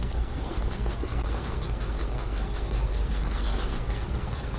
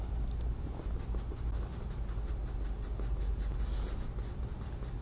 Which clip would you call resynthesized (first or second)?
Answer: first